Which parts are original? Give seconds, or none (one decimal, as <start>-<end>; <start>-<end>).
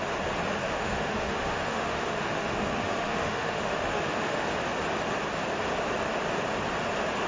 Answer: 0.0-0.6; 4.5-7.3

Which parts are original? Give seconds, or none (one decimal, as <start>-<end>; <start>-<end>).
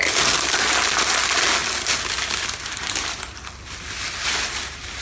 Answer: 0.0-5.0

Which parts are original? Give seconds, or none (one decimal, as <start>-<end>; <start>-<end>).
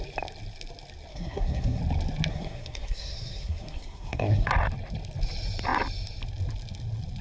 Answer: 0.0-1.1; 1.8-2.3; 4.5-7.2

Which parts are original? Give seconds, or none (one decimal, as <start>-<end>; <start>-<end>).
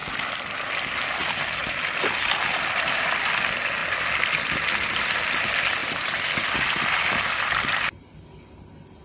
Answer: 0.7-1.2; 3.2-3.8; 5.2-5.8; 8.4-9.0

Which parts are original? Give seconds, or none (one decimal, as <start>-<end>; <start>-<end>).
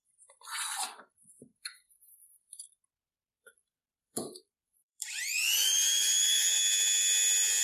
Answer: 6.6-7.6